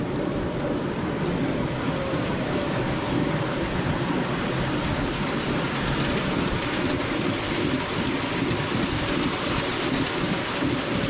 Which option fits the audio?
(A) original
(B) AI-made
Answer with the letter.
A